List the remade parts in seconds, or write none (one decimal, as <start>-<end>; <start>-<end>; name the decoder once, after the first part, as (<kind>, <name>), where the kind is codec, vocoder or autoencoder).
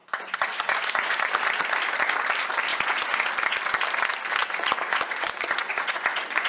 0.0-1.3 (vocoder, Vocos); 2.7-3.3; 4.4-6.5